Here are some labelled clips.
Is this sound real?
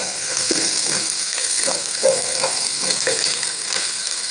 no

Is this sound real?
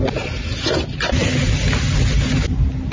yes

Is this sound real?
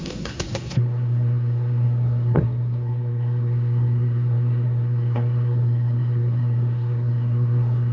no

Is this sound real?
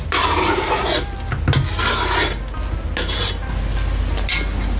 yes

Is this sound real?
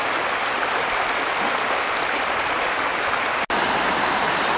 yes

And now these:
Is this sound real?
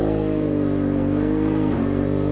no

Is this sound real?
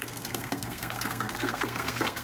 no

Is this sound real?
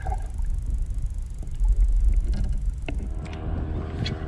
yes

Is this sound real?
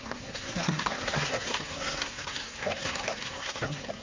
no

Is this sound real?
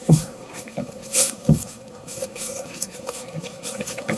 no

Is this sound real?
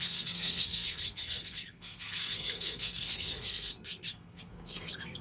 no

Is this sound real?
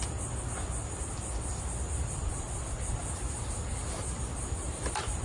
yes